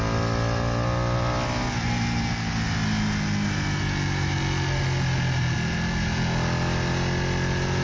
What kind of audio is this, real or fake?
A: real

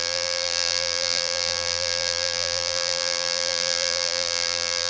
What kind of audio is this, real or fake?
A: fake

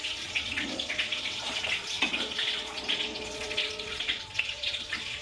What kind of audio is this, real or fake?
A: fake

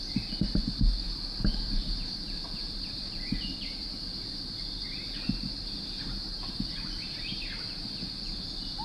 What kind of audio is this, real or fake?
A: real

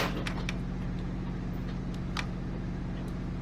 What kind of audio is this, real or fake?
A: real